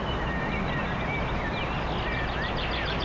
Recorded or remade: recorded